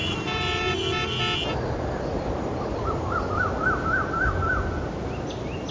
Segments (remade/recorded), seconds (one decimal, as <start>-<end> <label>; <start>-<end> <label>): 0.0-0.7 remade; 0.7-2.7 recorded; 2.7-3.6 remade; 3.6-5.7 recorded